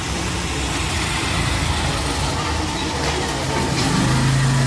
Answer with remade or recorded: recorded